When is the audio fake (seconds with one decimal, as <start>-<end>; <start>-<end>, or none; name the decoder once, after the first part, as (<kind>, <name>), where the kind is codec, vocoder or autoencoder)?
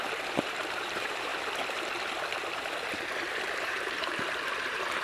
0.0-1.3 (vocoder, BigVGAN v2); 3.6-5.0